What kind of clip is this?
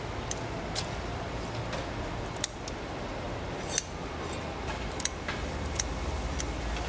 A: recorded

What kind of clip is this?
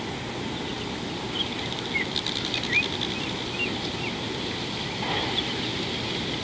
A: recorded